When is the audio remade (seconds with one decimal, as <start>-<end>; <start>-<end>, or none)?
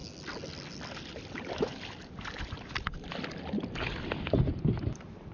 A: none